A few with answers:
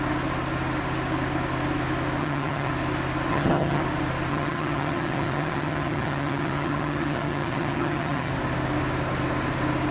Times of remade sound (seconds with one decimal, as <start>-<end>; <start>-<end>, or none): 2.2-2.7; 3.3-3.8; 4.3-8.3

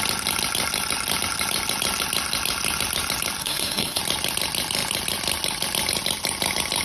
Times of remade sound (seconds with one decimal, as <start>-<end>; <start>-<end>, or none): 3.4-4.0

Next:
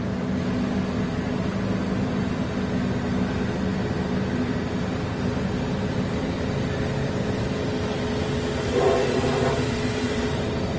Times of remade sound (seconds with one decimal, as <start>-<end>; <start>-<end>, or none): 1.8-2.4; 7.9-8.8